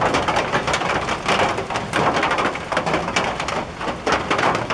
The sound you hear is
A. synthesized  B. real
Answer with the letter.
B